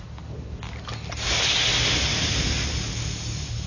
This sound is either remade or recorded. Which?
recorded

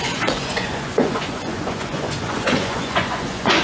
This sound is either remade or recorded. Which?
remade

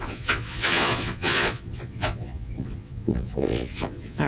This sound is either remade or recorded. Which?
remade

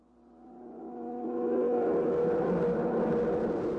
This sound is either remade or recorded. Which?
recorded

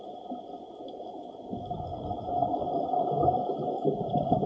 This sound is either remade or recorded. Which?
recorded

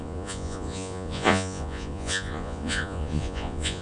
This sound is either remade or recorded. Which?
remade